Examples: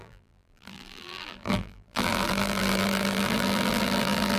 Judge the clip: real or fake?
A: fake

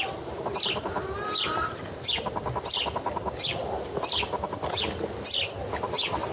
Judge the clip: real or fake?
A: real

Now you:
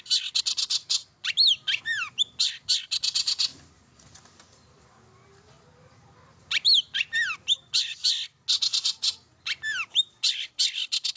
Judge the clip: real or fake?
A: real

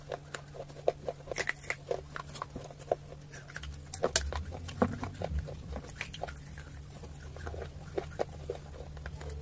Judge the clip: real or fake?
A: real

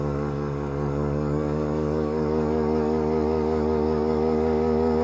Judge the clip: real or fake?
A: fake